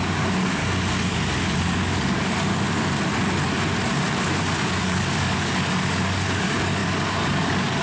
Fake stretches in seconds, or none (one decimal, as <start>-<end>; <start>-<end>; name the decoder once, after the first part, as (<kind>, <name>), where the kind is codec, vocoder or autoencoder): 0.0-0.6 (codec, DAC); 1.1-2.5; 4.8-7.8